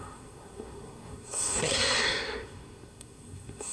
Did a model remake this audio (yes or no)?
yes